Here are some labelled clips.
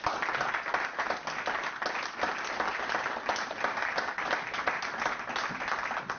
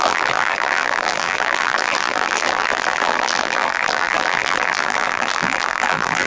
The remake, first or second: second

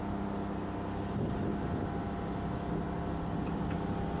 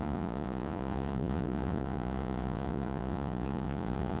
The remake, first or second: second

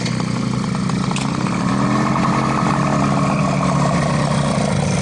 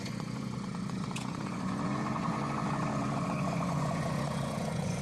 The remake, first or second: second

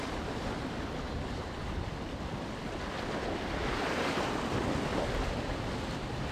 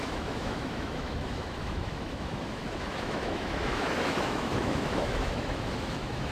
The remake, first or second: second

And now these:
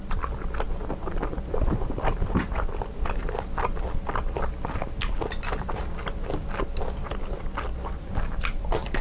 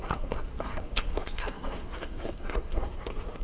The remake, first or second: second